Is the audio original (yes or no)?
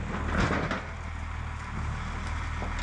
yes